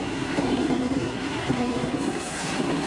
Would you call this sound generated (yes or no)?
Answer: yes